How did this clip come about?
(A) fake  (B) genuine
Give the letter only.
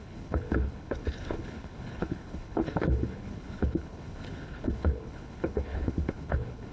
A